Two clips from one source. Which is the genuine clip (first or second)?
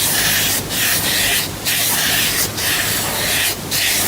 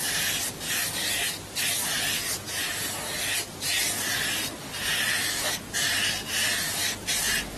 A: second